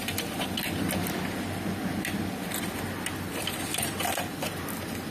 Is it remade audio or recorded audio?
recorded